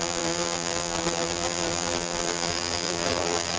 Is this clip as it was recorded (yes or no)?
no